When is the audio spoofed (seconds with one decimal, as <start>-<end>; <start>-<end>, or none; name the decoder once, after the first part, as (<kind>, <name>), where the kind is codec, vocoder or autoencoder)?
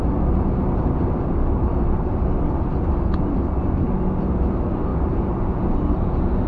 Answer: none